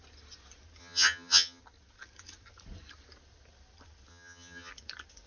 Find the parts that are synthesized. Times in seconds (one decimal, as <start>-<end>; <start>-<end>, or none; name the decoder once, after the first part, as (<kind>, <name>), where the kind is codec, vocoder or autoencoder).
0.8-1.6 (vocoder, HiFi-GAN); 4.1-4.7